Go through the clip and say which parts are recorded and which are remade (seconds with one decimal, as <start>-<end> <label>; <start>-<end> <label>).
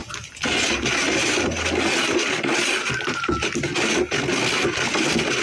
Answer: 0.0-5.4 recorded